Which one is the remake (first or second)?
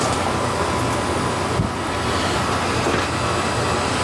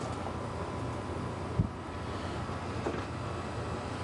second